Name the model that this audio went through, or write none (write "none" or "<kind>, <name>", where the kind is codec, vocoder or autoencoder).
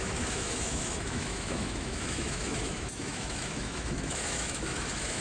autoencoder, DAC-VAE